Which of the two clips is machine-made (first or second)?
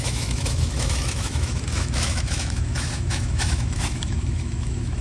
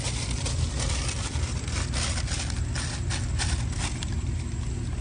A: first